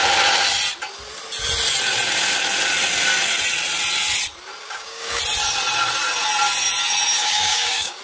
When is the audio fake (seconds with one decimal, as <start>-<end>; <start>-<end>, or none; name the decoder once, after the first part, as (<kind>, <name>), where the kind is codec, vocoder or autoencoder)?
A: 4.6-5.2 (codec, DAC); 7.2-8.0